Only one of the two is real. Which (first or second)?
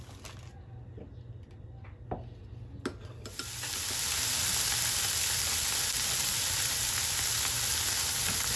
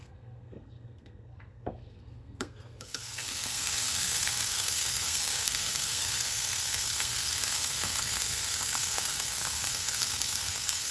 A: first